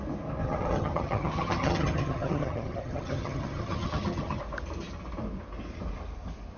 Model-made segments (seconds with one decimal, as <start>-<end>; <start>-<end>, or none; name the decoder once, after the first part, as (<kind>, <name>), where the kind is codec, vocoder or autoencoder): 0.4-4.4 (vocoder, HiFi-GAN)